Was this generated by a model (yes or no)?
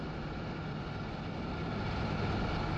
no